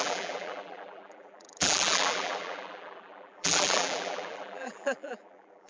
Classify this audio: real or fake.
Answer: fake